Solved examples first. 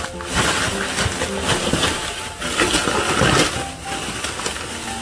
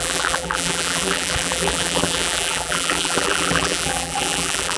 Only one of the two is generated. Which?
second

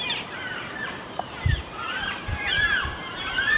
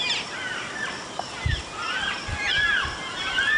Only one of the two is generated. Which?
first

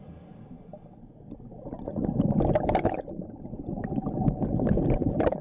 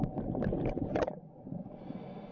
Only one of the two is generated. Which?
first